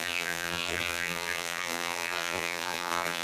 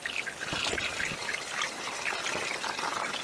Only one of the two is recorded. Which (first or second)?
second